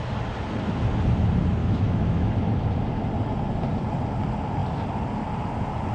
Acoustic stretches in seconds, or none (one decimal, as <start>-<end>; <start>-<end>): 0.0-1.6; 2.3-5.9